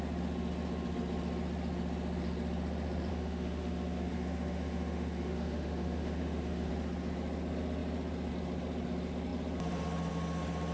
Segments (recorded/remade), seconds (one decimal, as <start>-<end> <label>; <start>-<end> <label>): 0.0-3.1 recorded; 3.1-6.7 remade; 6.7-10.7 recorded